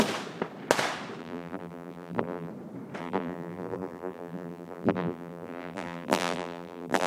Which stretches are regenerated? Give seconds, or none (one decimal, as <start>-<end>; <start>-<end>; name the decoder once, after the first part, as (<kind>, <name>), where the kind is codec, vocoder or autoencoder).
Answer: 1.2-2.5 (vocoder, BigVGAN v2); 3.0-7.1